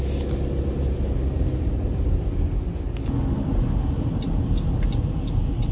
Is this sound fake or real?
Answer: real